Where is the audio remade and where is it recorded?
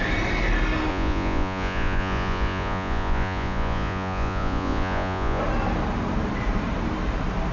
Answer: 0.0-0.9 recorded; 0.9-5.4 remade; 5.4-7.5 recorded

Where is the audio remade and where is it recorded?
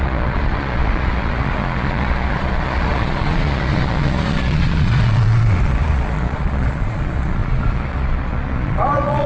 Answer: 0.0-9.3 remade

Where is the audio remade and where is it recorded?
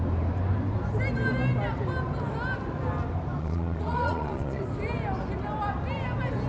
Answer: 0.0-3.4 recorded; 3.4-4.6 remade; 4.6-6.5 recorded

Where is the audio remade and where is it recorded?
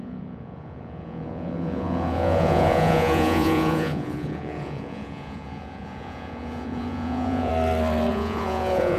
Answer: 0.0-7.5 remade; 7.5-8.1 recorded; 8.1-9.0 remade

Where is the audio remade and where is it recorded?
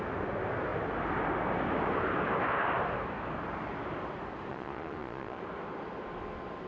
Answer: 0.0-4.5 recorded; 4.5-5.4 remade; 5.4-6.7 recorded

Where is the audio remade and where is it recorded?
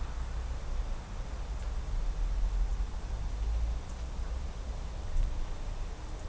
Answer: 0.0-6.3 recorded